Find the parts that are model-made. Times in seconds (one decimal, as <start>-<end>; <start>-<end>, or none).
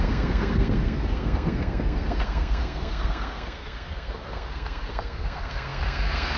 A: 0.0-6.4